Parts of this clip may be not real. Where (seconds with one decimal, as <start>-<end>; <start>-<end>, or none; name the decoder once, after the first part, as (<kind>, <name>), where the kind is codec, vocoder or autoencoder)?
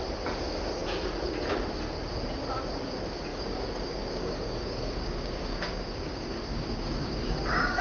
3.3-7.8 (codec, DAC)